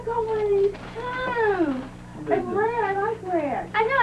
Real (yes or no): no